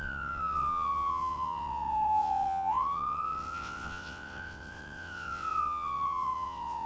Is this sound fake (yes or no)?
yes